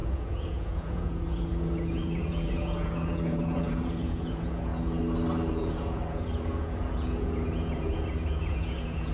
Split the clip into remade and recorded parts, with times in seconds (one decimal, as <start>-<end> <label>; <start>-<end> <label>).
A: 0.0-4.7 remade; 4.7-5.5 recorded; 5.5-9.1 remade